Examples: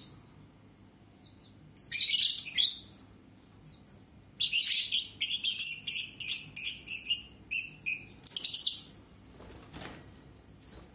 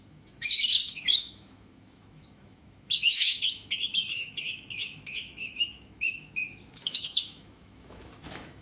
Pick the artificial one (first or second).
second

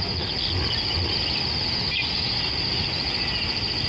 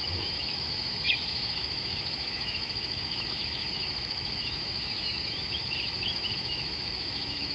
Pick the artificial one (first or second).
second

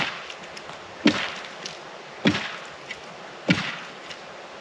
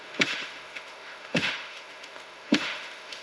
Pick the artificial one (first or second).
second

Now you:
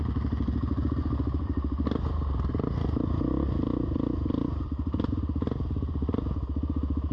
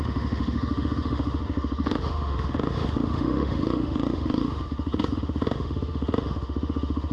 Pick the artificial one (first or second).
second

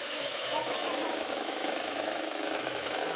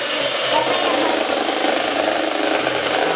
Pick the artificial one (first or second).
first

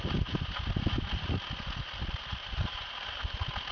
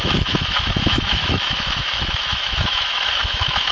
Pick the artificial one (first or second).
second